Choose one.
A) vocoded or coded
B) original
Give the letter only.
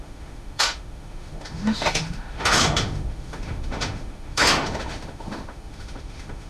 A